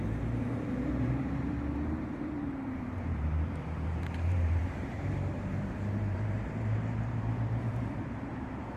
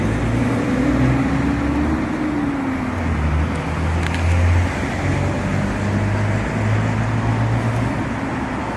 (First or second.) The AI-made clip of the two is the first